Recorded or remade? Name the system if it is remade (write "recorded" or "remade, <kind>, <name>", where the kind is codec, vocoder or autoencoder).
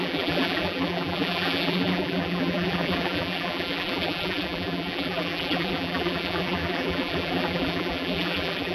remade, vocoder, BigVGAN v2